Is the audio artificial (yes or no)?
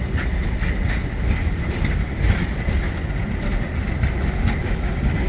no